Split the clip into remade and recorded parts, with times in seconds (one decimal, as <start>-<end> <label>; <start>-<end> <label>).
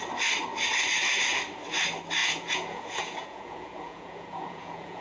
0.0-2.2 recorded; 2.2-5.0 remade